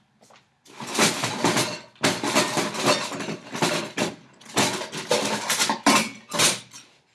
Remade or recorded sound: recorded